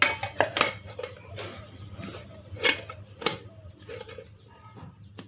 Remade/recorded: recorded